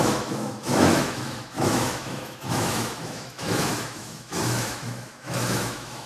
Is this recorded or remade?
remade